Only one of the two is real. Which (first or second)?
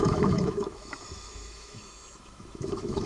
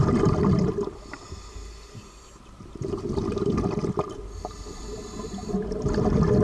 second